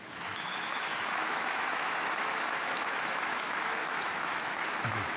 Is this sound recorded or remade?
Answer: remade